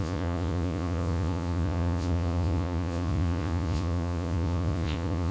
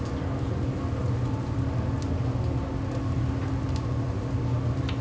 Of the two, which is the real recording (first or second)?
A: second